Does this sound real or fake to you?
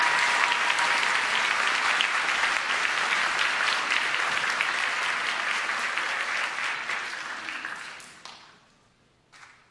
real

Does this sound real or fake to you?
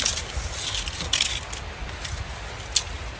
real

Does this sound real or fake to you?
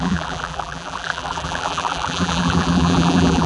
fake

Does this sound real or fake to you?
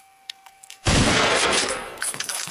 fake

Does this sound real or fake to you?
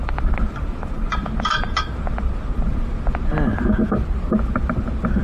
real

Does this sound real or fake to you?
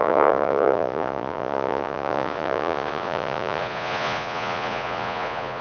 fake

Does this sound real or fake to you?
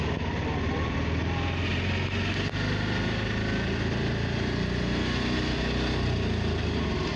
real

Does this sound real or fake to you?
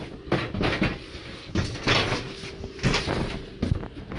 real